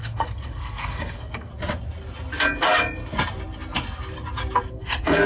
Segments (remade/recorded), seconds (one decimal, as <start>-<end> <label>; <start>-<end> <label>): 0.0-1.5 remade; 1.5-4.7 recorded; 4.7-5.3 remade